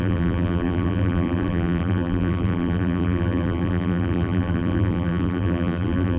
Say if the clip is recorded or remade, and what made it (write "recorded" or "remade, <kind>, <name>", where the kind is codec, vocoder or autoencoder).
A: remade, vocoder, BigVGAN v2